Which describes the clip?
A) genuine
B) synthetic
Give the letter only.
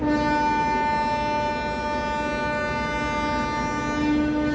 A